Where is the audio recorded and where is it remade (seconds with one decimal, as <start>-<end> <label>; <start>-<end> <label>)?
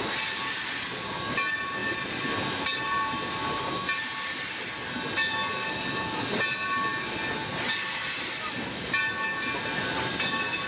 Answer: 0.0-10.7 recorded